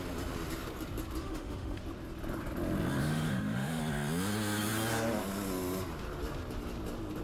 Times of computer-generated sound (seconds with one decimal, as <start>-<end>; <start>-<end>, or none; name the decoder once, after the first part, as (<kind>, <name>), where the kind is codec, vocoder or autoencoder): 1.2-1.8 (autoencoder, DAC-VAE); 3.0-3.8